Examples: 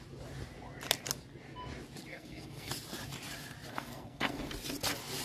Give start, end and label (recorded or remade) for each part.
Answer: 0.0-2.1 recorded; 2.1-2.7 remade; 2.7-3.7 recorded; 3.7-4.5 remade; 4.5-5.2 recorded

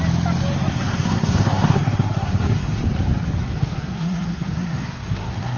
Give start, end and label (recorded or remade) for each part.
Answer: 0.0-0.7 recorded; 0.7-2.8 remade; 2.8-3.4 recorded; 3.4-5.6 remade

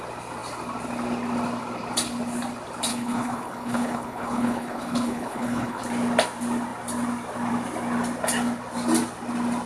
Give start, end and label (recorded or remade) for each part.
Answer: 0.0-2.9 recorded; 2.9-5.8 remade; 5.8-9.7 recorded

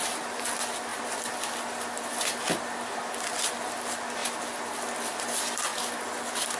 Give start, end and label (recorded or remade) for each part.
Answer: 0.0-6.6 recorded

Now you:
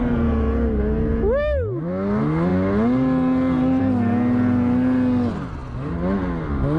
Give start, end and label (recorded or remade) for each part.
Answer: 0.0-6.8 recorded